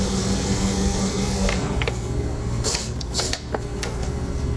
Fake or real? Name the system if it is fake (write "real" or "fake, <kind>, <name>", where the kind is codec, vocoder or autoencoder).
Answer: fake, codec, SNAC